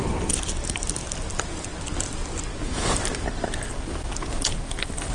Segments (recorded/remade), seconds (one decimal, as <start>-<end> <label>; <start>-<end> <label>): 0.0-5.1 recorded